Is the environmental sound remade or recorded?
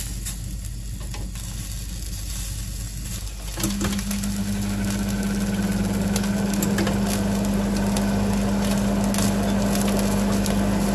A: recorded